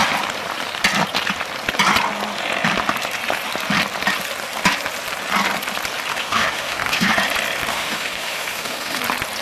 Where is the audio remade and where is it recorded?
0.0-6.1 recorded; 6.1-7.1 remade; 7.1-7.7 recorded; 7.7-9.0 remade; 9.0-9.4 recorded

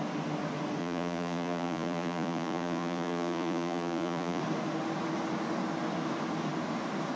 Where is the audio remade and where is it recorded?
0.0-0.8 recorded; 0.8-4.4 remade; 4.4-7.2 recorded

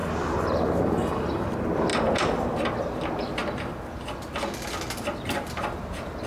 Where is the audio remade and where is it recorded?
0.0-1.9 recorded; 1.9-2.8 remade; 2.8-6.3 recorded

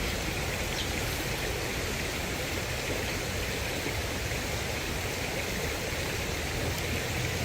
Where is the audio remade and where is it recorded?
0.0-1.7 recorded; 1.7-3.4 remade; 3.4-7.4 recorded

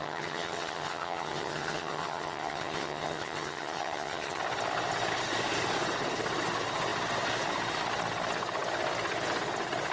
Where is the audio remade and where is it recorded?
0.0-4.4 remade; 4.4-9.9 recorded

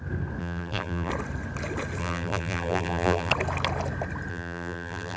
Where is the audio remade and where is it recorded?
0.0-0.4 recorded; 0.4-1.1 remade; 1.1-2.0 recorded; 2.0-3.3 remade; 3.3-4.3 recorded; 4.3-5.2 remade